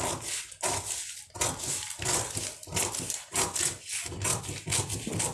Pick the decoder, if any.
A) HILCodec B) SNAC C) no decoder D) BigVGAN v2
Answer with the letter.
C